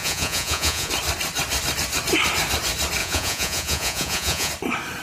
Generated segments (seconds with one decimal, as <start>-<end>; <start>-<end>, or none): 0.0-0.9; 3.0-4.5